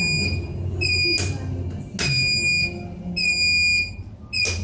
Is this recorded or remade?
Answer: recorded